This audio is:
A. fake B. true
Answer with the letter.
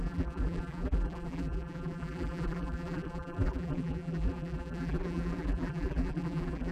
A